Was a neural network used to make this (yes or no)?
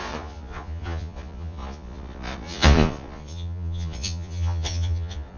yes